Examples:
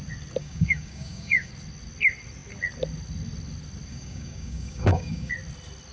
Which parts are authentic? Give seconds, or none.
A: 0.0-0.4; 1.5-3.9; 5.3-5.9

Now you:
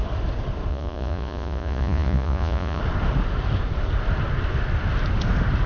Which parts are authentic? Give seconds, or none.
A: 0.0-0.7; 2.8-5.7

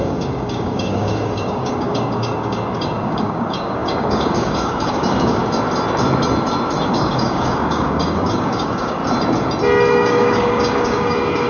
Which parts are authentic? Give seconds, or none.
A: 5.4-6.9; 9.0-9.9

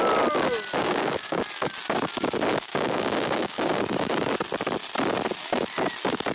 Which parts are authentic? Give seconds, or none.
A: 0.0-0.8; 1.4-2.7; 3.9-6.3